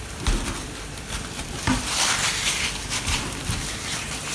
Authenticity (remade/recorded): remade